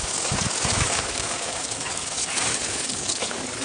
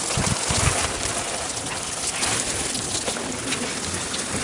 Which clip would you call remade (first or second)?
first